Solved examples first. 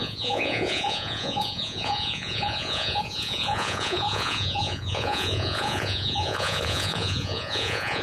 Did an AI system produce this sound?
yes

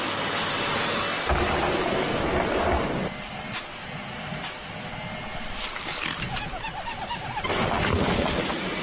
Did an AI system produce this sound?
no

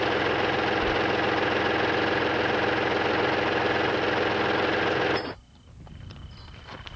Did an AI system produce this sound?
no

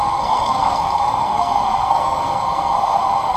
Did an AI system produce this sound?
yes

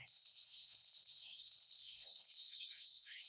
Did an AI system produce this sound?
yes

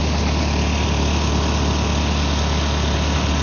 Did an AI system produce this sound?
no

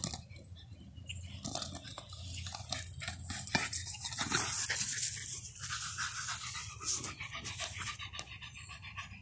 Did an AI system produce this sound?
no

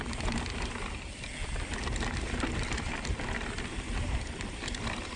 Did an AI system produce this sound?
no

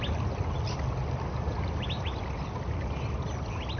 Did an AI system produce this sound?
no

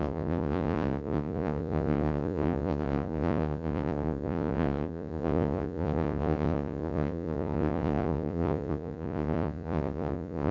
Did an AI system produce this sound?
yes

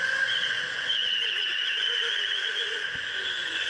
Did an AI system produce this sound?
yes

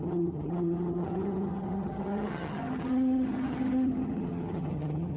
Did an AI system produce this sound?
yes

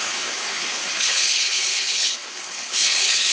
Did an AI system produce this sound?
yes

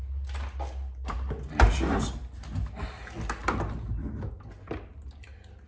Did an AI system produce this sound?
no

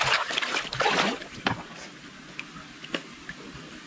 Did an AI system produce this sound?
no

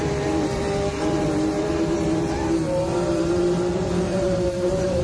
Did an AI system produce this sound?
yes